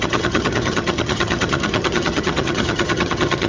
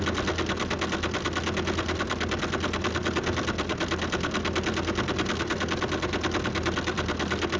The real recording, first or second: second